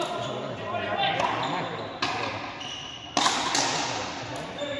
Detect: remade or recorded recorded